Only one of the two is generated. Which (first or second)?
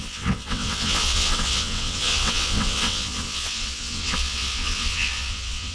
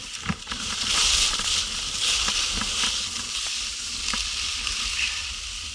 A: first